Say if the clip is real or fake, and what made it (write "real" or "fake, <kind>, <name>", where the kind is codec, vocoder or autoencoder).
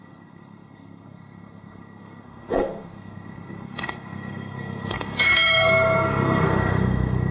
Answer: fake, codec, SNAC